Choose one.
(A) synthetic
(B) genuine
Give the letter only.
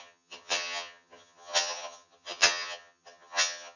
A